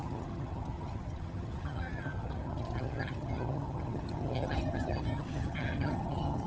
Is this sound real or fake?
fake